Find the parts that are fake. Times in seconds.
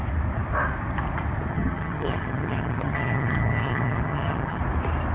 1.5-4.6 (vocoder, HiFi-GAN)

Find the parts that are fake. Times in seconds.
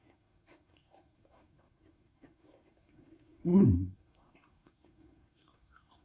0.0-6.0 (codec, SNAC)